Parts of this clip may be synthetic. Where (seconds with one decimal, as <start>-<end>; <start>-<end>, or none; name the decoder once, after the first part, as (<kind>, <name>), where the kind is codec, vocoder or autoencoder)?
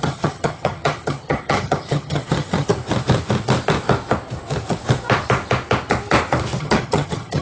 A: 0.0-2.7 (vocoder, HiFi-GAN); 6.6-7.4